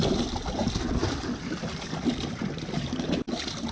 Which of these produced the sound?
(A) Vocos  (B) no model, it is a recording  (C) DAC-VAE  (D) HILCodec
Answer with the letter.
B